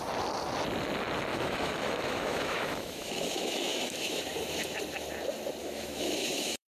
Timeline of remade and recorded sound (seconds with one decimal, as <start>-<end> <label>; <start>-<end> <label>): 0.0-1.3 recorded; 1.3-4.2 remade; 4.2-5.6 recorded; 5.6-6.7 remade